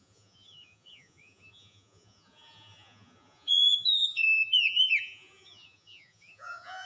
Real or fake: fake